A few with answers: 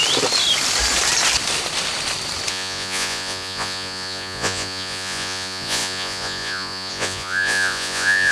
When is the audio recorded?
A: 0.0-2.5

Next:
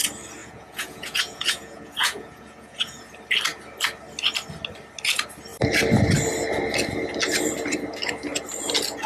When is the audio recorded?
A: 0.0-0.4; 3.1-9.1

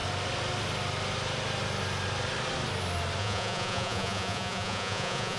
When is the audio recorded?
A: 0.0-3.2

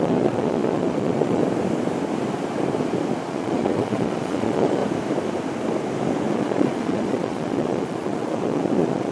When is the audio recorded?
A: 1.4-3.3; 4.8-6.3